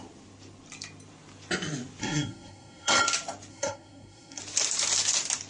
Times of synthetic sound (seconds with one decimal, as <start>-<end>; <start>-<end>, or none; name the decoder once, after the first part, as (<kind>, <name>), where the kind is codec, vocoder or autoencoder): 2.0-3.0 (codec, SNAC); 3.5-4.4